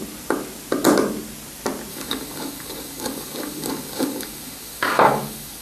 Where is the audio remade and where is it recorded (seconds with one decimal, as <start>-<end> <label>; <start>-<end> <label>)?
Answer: 0.0-1.9 recorded; 1.9-5.6 remade